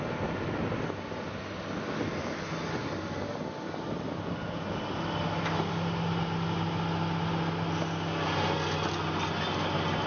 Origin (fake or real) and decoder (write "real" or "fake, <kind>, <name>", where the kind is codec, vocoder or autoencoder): real